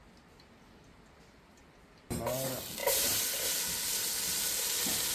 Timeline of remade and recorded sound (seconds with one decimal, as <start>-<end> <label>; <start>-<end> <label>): 0.0-5.1 recorded